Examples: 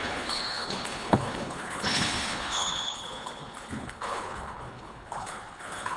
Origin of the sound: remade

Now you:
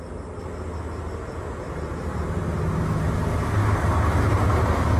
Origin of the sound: recorded